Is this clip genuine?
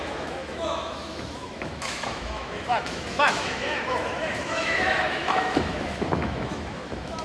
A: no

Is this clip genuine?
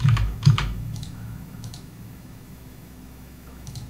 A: no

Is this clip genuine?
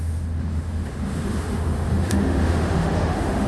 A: no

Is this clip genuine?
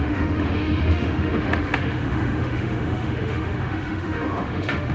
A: no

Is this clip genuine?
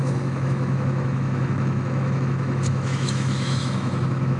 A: no